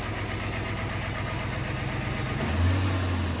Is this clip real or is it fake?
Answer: real